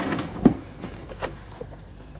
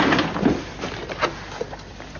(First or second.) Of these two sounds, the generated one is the first